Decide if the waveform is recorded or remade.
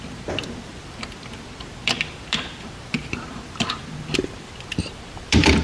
remade